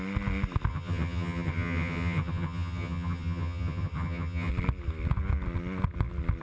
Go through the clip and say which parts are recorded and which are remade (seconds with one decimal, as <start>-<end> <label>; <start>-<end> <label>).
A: 0.0-0.7 recorded; 0.7-4.5 remade; 4.5-6.4 recorded